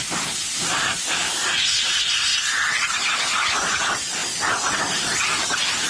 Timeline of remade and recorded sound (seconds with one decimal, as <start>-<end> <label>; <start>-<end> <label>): 0.0-5.9 recorded